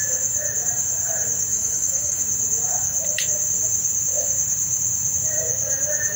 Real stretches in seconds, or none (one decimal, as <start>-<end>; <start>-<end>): 0.0-1.5; 2.2-6.2